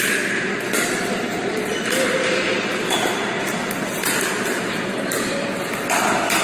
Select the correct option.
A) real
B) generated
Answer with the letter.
A